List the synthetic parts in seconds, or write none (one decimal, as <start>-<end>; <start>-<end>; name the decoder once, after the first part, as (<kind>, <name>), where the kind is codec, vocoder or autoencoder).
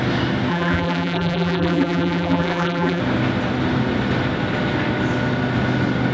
0.5-3.0 (vocoder, BigVGAN v2)